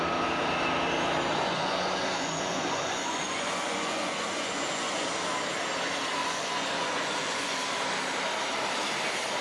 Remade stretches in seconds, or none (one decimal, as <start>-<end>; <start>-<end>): 1.3-5.1; 6.2-7.6